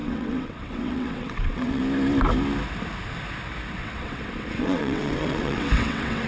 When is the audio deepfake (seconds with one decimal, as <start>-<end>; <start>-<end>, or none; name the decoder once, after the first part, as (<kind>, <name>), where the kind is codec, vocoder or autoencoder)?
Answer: 0.0-1.8 (vocoder, WaveNeXt); 3.8-6.3